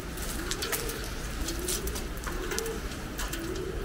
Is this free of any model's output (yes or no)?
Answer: yes